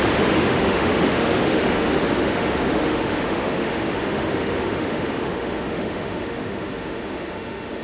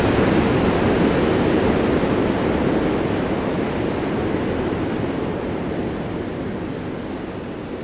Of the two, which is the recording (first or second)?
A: second